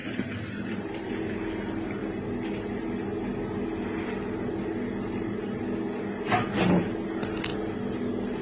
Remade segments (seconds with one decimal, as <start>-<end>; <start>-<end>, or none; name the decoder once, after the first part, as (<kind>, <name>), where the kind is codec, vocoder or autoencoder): 0.0-1.1 (vocoder, BigVGAN v2)

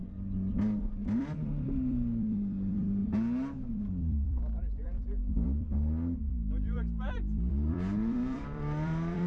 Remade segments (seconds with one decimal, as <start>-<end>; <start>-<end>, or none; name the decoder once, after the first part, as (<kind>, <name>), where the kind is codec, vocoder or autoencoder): 0.8-3.0 (vocoder, BigVGAN v2); 3.7-9.3